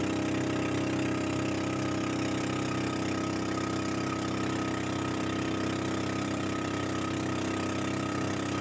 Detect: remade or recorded recorded